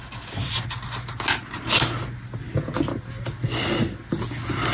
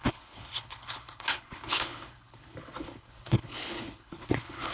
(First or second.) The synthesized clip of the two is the second